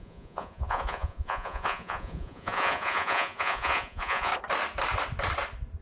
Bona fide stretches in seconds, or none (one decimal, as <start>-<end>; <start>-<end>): 4.3-5.8